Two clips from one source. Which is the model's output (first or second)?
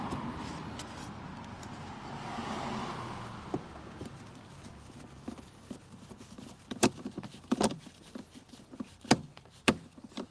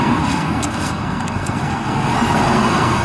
second